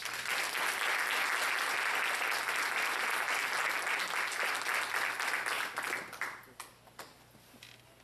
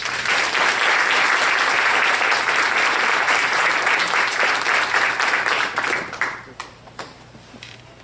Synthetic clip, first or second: second